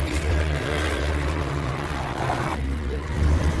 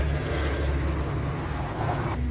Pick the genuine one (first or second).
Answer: second